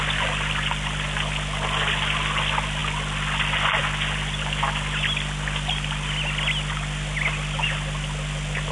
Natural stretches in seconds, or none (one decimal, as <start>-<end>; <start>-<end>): 0.0-8.7